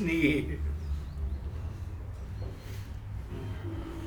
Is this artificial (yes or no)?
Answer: no